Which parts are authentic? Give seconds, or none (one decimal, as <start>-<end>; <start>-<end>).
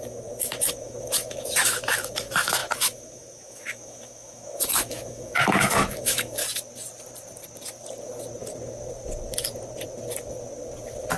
6.4-11.2